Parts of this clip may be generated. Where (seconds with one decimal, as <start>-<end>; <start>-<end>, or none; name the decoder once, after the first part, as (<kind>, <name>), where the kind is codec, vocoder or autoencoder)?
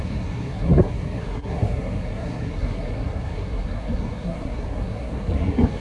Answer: 0.0-5.8 (codec, SNAC)